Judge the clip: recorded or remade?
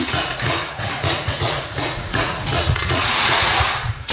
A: remade